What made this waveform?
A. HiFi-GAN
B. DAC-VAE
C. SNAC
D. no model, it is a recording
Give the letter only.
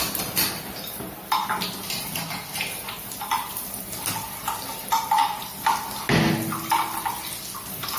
D